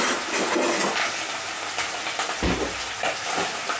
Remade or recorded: recorded